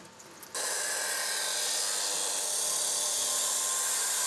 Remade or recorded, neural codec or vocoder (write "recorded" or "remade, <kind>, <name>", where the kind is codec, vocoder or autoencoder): recorded